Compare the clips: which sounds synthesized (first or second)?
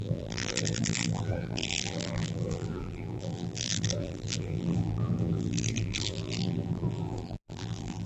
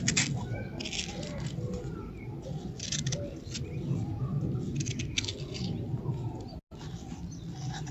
first